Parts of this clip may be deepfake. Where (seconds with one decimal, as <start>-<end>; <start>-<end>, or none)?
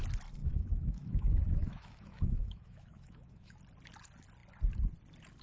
0.4-3.6